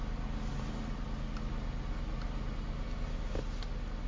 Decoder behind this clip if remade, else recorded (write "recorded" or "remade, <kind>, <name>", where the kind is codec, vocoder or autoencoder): recorded